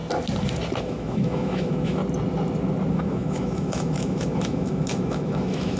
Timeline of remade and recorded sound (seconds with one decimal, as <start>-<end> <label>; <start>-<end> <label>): 0.0-0.8 recorded; 0.8-2.0 remade; 2.0-2.9 recorded; 2.9-5.8 remade